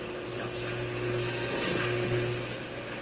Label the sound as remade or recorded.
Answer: recorded